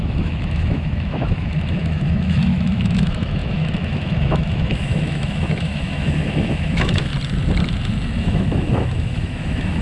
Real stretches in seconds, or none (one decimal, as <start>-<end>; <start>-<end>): 7.1-8.2